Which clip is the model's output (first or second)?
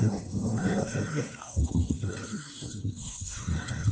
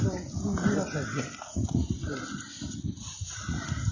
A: first